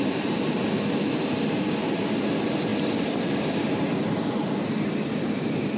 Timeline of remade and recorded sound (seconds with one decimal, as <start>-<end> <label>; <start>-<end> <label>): 0.0-5.8 recorded